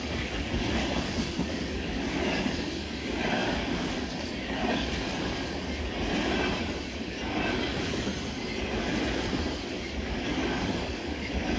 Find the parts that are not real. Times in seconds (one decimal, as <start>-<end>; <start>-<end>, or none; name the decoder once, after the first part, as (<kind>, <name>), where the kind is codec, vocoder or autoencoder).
0.0-5.9 (codec, DAC); 6.6-8.1; 9.7-11.6